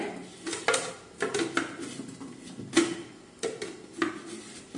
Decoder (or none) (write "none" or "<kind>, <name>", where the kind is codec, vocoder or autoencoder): none